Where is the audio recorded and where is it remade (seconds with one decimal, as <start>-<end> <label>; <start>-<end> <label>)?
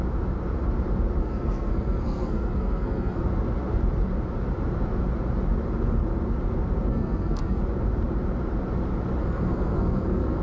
0.0-1.2 recorded; 1.2-3.2 remade; 3.2-6.9 recorded; 6.9-7.6 remade; 7.6-9.2 recorded; 9.2-10.4 remade